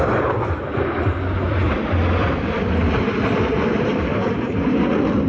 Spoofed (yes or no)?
no